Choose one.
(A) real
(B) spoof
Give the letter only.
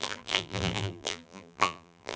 B